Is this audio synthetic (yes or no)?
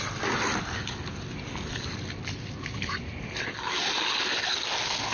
no